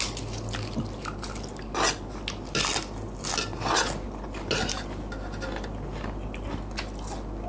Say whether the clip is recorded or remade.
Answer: recorded